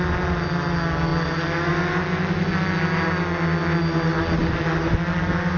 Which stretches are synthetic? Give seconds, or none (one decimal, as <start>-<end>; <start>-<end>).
none

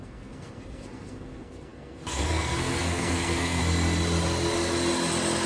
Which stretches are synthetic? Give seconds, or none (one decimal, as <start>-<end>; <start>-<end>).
0.0-3.6

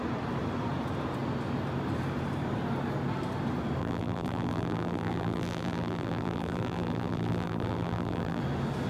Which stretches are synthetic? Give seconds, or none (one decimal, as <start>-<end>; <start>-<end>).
3.8-8.4

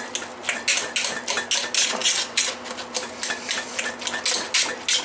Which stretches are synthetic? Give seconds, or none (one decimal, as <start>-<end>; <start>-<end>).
none

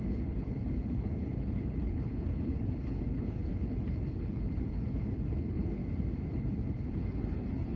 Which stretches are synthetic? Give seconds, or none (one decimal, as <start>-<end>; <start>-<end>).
0.0-5.8; 6.4-7.8

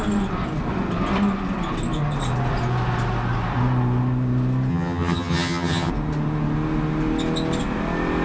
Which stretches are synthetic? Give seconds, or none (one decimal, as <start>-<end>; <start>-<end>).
4.7-5.9

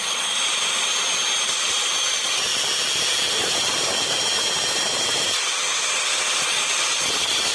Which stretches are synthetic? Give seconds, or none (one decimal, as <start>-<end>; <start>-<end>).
0.0-0.9; 1.4-2.5; 3.3-7.5